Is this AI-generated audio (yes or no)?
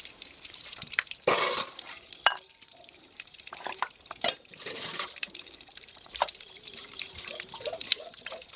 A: yes